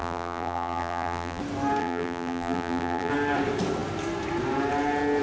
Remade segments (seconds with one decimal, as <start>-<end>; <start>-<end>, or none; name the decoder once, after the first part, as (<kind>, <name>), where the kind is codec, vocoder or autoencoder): 0.0-1.4 (vocoder, BigVGAN v2); 1.8-3.1

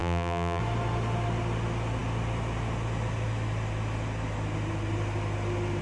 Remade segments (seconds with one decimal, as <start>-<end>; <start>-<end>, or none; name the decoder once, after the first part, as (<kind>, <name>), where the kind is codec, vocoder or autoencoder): 0.0-0.6 (vocoder, BigVGAN v2)

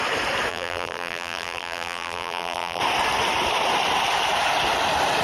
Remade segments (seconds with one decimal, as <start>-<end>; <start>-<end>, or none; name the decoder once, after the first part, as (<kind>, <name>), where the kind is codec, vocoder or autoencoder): 0.5-2.8 (vocoder, BigVGAN v2)

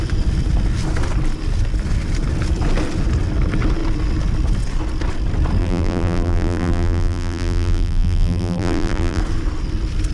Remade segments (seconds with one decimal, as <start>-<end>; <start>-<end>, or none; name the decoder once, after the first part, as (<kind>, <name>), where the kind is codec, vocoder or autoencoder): 5.6-9.2 (vocoder, BigVGAN v2)